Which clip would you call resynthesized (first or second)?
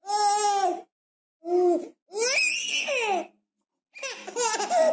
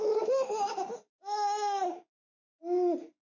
second